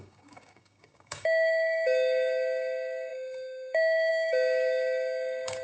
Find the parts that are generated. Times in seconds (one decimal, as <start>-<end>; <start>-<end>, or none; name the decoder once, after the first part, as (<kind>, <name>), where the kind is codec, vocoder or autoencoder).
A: 0.0-5.6 (codec, DAC)